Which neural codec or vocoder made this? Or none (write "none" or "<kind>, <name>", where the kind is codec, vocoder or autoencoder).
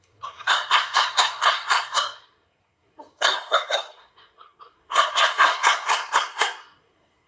codec, SNAC